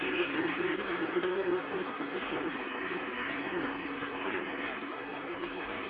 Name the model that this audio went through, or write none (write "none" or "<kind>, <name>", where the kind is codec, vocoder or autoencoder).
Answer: codec, SNAC